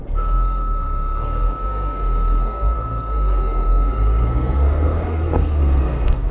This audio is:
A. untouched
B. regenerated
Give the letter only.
B